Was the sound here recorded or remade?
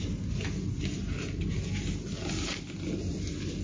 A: recorded